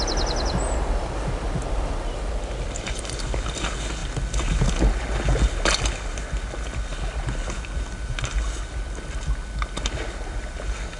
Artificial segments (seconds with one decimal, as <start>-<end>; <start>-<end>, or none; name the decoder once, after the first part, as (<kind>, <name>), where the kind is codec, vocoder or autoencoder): none

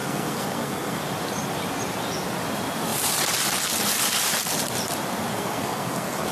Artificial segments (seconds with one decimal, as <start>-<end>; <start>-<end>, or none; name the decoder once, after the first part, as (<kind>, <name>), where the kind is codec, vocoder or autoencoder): 0.0-1.0 (codec, SNAC); 5.3-6.3